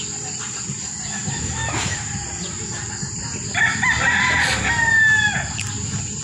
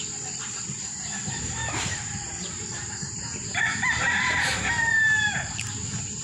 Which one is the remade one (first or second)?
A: second